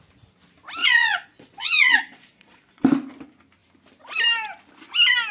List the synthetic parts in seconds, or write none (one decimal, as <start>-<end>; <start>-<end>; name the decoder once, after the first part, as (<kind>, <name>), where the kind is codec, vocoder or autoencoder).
0.8-2.8 (vocoder, Vocos)